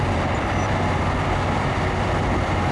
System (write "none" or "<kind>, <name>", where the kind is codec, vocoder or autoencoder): vocoder, BigVGAN v2